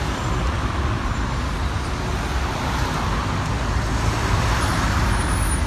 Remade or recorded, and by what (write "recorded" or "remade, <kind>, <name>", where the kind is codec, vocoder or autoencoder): recorded